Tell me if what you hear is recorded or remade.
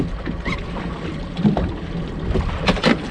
recorded